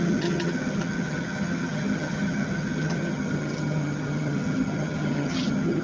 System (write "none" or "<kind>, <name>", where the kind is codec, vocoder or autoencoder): vocoder, HiFi-GAN